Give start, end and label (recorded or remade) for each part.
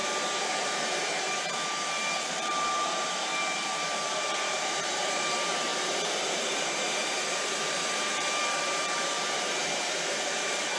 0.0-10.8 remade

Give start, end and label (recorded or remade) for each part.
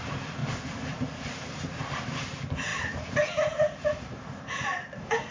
0.0-0.4 remade; 0.4-1.5 recorded; 1.5-5.3 remade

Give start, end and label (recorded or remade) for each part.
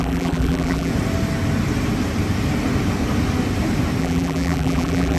0.0-0.9 remade; 0.9-4.0 recorded; 4.0-5.2 remade